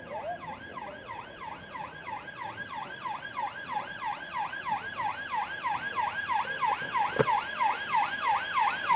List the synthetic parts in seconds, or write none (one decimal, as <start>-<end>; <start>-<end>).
0.7-4.6